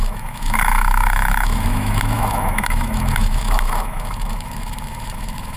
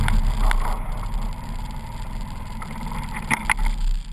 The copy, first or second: first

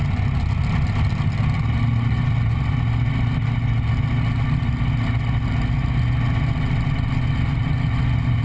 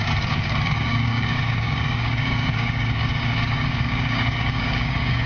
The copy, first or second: second